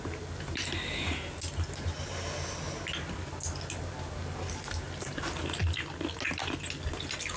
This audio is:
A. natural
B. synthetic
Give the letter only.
A